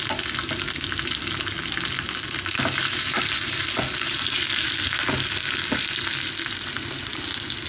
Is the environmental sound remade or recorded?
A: recorded